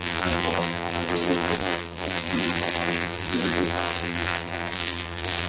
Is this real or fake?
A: fake